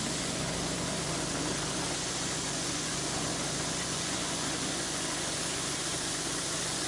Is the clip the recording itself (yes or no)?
no